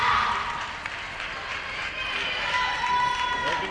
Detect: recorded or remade recorded